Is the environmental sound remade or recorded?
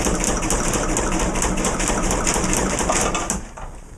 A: remade